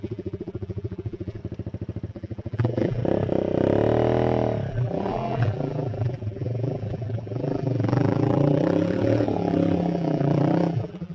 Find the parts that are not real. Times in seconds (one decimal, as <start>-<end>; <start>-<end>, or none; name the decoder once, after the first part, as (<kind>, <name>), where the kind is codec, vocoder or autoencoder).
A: 0.0-1.4 (vocoder, BigVGAN v2); 2.1-3.0; 4.7-11.1